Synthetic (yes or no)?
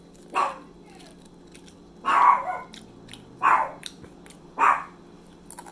no